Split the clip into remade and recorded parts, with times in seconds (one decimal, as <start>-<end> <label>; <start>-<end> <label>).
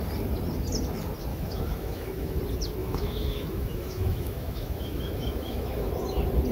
0.0-1.3 recorded; 1.3-2.4 remade; 2.4-2.8 recorded; 2.8-5.9 remade; 5.9-6.5 recorded